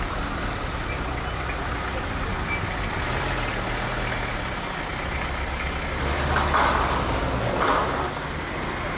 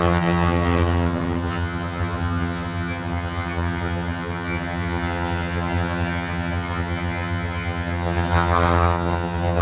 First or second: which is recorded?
first